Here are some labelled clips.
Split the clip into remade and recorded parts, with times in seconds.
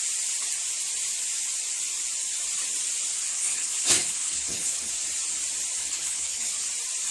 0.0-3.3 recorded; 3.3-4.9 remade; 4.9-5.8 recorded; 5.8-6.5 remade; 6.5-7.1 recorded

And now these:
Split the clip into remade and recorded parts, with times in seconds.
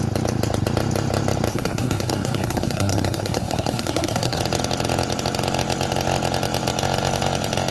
0.0-1.5 recorded; 1.5-4.4 remade; 4.4-7.7 recorded